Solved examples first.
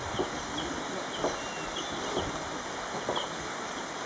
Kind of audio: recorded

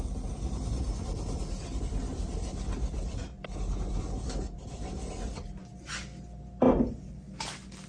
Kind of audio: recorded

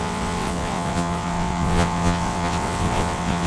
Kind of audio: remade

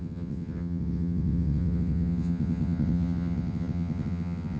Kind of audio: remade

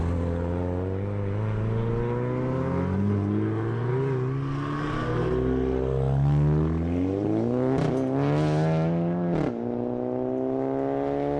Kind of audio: recorded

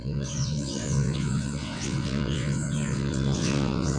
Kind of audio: remade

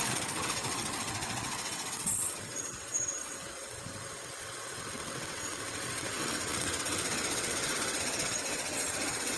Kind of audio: remade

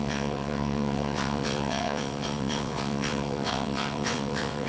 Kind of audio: remade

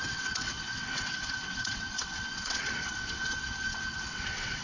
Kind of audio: remade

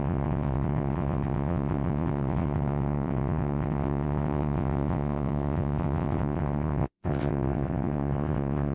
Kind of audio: remade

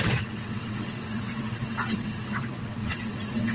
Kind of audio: remade